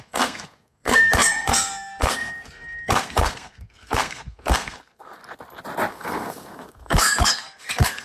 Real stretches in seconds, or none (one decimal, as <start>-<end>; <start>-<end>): 5.2-5.9